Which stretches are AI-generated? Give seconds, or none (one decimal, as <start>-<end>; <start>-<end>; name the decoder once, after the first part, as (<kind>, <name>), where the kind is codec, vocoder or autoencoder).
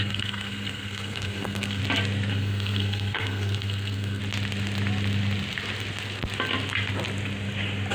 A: 0.0-1.8 (codec, SNAC); 2.3-4.2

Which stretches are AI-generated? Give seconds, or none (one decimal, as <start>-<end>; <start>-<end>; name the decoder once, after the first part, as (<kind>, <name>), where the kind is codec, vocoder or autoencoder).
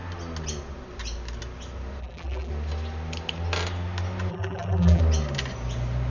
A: 2.0-2.5 (vocoder, BigVGAN v2); 4.3-5.0